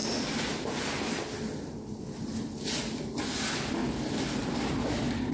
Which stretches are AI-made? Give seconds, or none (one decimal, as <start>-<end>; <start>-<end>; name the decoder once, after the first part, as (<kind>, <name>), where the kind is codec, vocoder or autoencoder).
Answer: none